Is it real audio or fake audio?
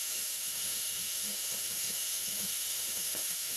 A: fake